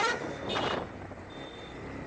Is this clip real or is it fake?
real